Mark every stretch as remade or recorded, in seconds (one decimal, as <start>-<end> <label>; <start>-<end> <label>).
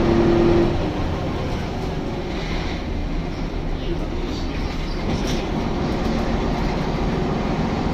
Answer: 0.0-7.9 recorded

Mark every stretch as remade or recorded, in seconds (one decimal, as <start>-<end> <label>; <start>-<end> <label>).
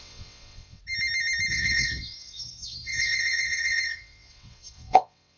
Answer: 0.0-0.8 remade; 0.8-1.5 recorded; 1.5-5.4 remade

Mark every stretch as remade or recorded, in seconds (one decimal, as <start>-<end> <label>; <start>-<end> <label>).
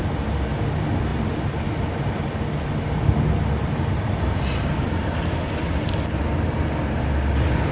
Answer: 0.0-7.7 recorded